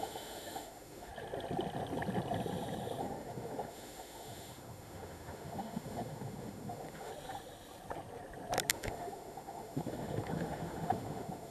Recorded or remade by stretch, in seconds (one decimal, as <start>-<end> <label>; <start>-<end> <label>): 0.0-1.1 remade; 1.1-3.0 recorded; 3.0-7.1 remade; 7.1-8.7 recorded; 8.7-11.5 remade